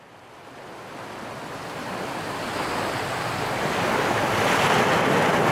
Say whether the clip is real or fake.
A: real